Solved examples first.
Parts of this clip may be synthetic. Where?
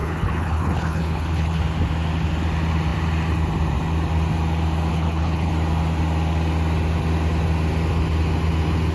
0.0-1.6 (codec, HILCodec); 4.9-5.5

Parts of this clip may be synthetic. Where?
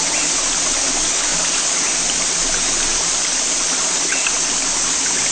none